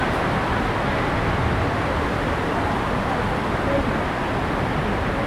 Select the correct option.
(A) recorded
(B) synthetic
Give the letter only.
A